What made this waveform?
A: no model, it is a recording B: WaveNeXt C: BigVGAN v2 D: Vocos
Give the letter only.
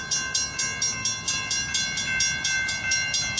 A